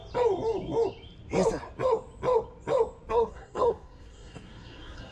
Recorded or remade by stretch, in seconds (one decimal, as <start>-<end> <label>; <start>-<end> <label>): 0.0-3.1 recorded; 3.1-5.1 remade